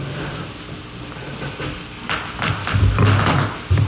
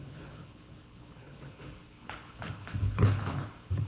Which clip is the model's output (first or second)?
second